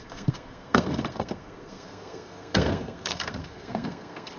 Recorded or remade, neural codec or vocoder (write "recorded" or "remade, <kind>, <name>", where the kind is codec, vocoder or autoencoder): remade, codec, SNAC